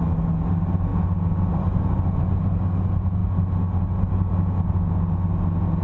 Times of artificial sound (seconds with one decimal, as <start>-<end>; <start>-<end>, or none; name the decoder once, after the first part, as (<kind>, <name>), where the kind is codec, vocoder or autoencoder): none